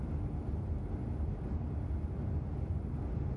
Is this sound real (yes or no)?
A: yes